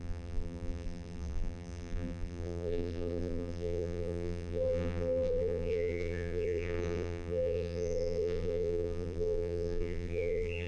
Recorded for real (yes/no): no